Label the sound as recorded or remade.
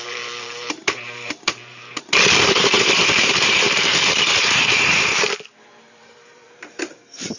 remade